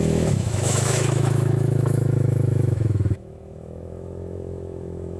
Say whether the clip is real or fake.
fake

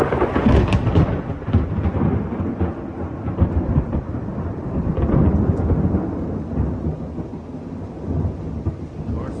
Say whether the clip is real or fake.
real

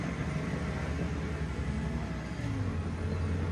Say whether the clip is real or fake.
real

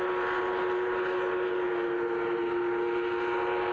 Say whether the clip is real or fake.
real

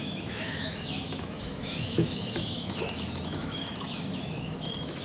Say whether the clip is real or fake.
fake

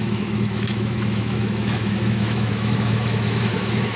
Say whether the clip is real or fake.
fake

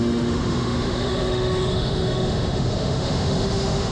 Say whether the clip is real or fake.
fake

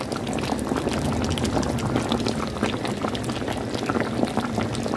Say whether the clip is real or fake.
real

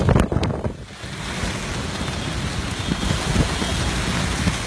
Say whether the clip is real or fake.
real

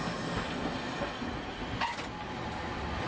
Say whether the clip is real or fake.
real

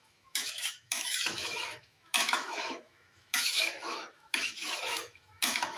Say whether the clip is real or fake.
fake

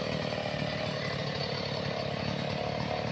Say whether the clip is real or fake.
real